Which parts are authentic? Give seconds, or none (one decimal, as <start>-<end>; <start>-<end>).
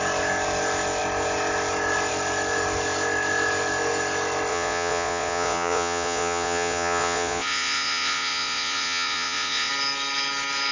0.0-4.5; 9.7-10.7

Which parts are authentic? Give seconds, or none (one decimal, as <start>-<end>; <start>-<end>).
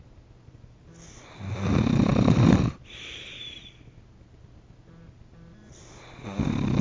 0.0-6.8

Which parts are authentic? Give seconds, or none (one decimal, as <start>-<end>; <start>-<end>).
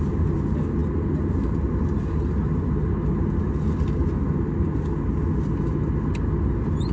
0.0-6.9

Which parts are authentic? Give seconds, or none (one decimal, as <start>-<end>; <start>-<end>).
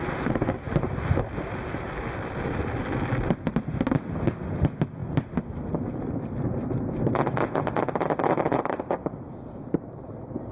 0.0-10.5